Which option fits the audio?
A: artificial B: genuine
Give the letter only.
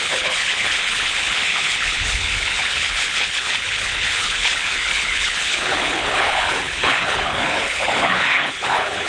A